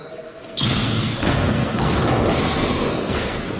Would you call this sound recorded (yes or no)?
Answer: no